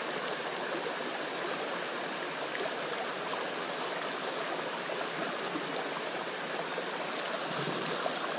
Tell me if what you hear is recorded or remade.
recorded